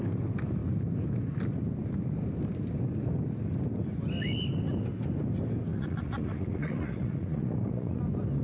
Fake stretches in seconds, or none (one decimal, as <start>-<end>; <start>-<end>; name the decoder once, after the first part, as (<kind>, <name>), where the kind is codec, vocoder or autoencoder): 5.7-8.0 (vocoder, Vocos)